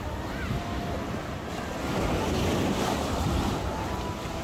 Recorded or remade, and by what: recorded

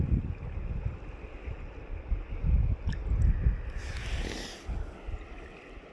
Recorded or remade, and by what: recorded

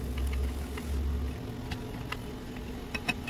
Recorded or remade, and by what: recorded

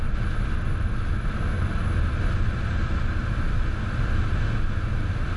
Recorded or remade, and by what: recorded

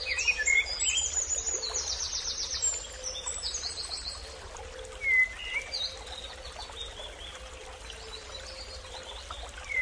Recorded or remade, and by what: recorded